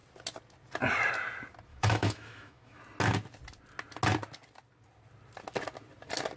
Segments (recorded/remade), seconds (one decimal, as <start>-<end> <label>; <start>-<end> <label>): 0.0-1.7 recorded; 1.7-2.8 remade; 2.8-6.4 recorded